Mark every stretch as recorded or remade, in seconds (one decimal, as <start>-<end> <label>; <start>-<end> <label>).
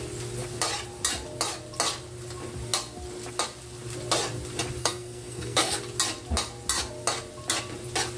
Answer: 0.0-4.8 recorded; 4.8-5.8 remade; 5.8-8.2 recorded